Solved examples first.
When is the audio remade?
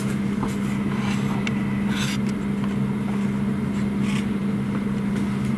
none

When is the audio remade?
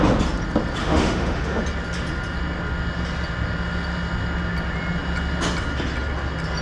0.8-1.6 (autoencoder, DAC-VAE)